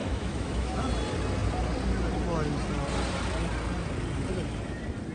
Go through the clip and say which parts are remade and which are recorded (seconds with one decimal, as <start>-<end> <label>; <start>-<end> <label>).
0.0-0.9 remade; 0.9-5.1 recorded